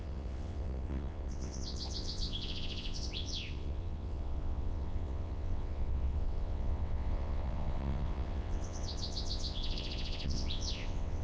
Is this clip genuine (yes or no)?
no